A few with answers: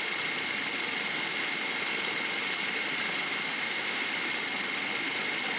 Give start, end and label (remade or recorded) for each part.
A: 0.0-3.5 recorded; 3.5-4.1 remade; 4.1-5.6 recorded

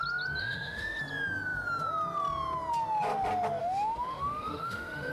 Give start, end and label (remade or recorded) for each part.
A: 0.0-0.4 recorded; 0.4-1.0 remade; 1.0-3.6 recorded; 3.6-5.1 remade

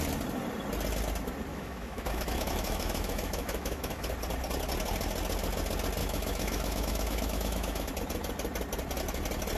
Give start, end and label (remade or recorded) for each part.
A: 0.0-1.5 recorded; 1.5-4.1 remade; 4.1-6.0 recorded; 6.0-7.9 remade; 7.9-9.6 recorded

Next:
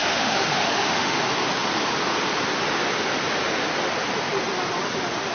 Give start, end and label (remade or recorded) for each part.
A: 0.0-1.2 remade; 1.2-5.3 recorded

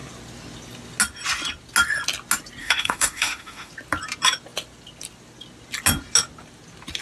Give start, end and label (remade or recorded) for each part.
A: 0.0-2.6 recorded; 2.6-3.7 remade; 3.7-7.0 recorded

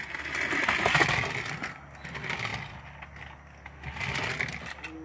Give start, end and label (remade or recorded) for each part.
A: 0.0-5.0 recorded

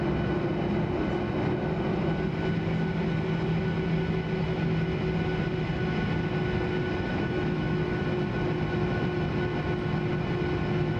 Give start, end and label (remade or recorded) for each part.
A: 0.0-7.1 recorded; 7.1-8.0 remade; 8.0-11.0 recorded